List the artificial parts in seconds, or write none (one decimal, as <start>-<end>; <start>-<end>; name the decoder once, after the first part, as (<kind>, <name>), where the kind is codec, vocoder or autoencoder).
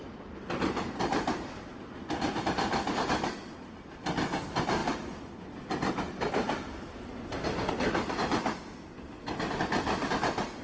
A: none